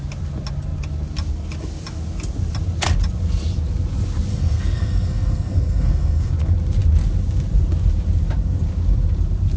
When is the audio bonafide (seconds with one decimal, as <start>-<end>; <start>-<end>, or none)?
0.0-4.3; 6.3-9.6